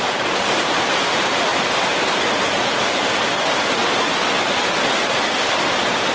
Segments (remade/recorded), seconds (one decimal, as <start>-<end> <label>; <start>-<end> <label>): 0.0-1.5 remade; 1.5-3.0 recorded; 3.0-3.5 remade; 3.5-5.0 recorded; 5.0-6.1 remade